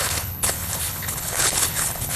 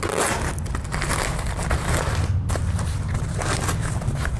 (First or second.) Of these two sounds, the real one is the second